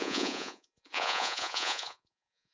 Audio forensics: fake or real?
fake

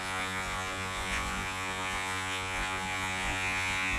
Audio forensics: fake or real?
fake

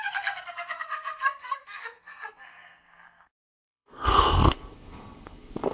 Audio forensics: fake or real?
fake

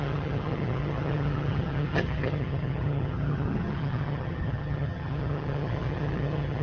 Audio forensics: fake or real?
fake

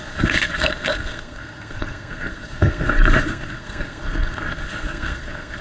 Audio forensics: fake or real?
fake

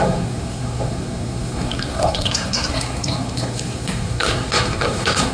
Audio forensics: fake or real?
fake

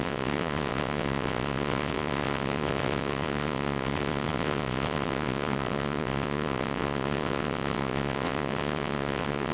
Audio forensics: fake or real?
fake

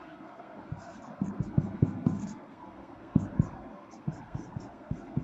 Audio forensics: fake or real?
fake